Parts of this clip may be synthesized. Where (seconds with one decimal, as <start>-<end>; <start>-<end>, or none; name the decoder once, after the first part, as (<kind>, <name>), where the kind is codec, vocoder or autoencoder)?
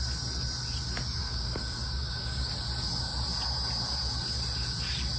1.2-2.5 (codec, DAC)